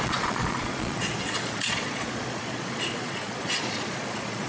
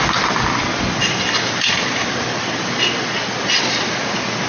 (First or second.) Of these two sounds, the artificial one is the first